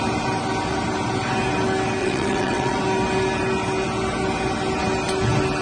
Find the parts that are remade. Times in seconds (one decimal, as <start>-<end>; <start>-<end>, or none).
2.0-2.8